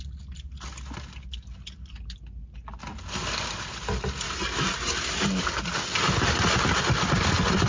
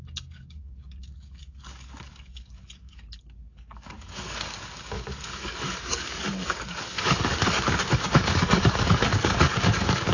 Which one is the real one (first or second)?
first